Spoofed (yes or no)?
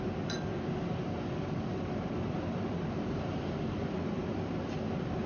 no